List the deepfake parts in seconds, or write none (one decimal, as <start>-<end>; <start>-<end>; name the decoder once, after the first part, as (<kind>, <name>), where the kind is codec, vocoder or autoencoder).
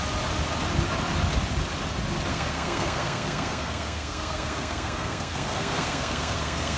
2.3-6.8 (codec, SNAC)